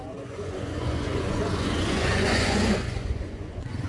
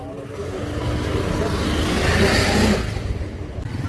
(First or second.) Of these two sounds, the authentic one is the second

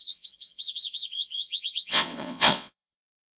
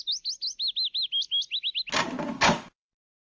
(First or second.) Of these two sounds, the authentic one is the second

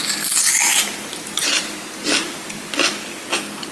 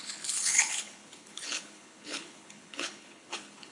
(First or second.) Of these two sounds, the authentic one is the first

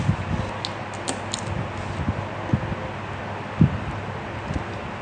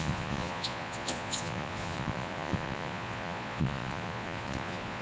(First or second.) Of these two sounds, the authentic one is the first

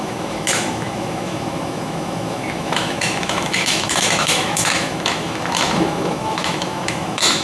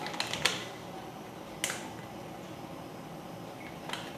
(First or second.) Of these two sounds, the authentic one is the second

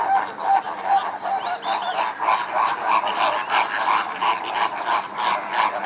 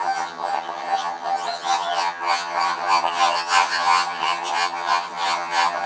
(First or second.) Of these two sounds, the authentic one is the first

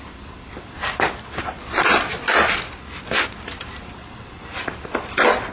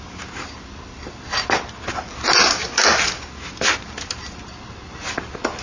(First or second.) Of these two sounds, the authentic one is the second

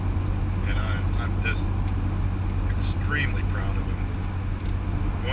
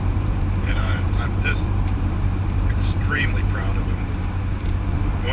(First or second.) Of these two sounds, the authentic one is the first